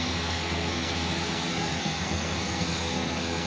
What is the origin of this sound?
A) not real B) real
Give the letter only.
A